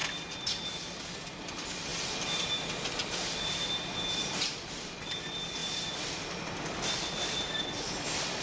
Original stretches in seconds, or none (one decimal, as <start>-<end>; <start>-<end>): 0.0-1.5; 1.9-2.7